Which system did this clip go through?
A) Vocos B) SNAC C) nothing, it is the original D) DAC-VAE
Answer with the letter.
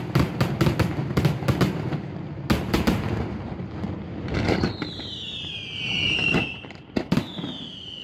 C